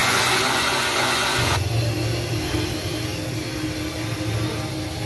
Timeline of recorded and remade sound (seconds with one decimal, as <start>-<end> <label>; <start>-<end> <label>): 0.0-1.7 remade; 1.7-5.1 recorded

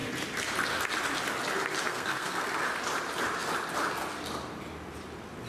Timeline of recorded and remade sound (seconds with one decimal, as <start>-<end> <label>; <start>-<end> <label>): 0.0-1.9 recorded; 1.9-2.5 remade; 2.5-5.5 recorded

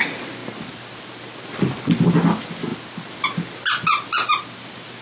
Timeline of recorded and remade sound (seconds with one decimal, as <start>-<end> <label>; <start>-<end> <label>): 0.0-5.0 recorded

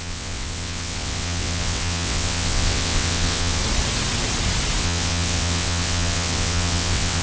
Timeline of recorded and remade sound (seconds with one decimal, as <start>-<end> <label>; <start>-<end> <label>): 0.0-3.6 remade; 3.6-4.8 recorded; 4.8-7.2 remade

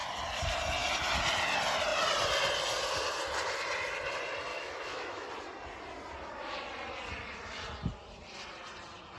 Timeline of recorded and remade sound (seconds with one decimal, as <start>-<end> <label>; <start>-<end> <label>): 0.0-4.5 recorded; 4.5-5.3 remade; 5.3-9.2 recorded

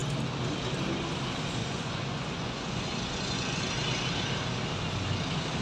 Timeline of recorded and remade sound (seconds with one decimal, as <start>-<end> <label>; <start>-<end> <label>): 0.0-1.6 recorded; 1.6-3.6 remade; 3.6-5.6 recorded